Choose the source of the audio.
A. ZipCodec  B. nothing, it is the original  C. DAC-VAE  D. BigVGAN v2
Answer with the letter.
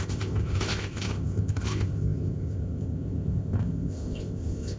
A